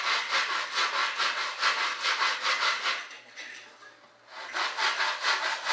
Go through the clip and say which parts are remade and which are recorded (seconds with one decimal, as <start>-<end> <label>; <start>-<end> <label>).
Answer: 0.0-5.7 recorded